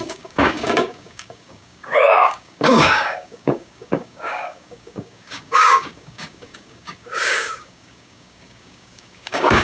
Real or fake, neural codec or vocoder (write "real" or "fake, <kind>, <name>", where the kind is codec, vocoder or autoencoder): fake, codec, DAC